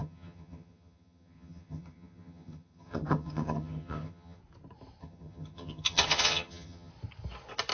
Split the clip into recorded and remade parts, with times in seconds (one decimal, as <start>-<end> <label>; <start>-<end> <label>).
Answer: 0.0-4.4 remade; 4.4-5.0 recorded; 5.0-6.9 remade; 6.9-7.7 recorded